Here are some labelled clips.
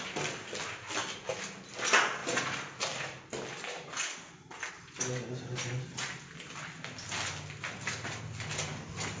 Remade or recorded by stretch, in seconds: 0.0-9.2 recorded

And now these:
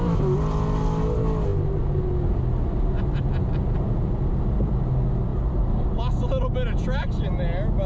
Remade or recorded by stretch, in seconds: 0.0-7.9 recorded

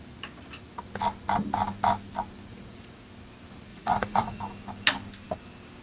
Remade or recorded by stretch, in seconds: 0.0-2.5 recorded; 2.5-3.1 remade; 3.1-3.7 recorded; 3.7-4.4 remade; 4.4-5.8 recorded

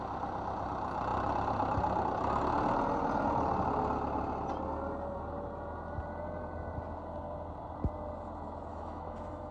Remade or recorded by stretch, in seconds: 0.0-8.7 recorded; 8.7-9.5 remade

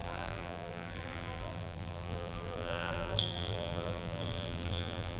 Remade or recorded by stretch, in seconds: 0.0-5.2 remade

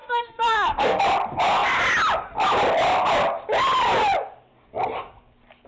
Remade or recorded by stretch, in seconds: 0.0-1.0 remade; 1.0-5.7 recorded

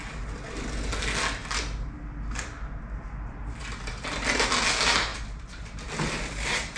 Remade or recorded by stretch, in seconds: 0.0-5.1 recorded; 5.1-5.9 remade; 5.9-6.8 recorded

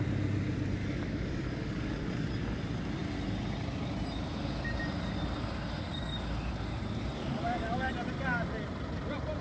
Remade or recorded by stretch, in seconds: 0.0-0.8 recorded; 0.8-2.3 remade; 2.3-7.2 recorded; 7.2-7.9 remade; 7.9-9.4 recorded